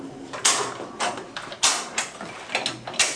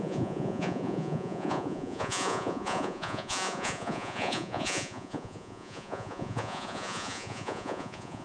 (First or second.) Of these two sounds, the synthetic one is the second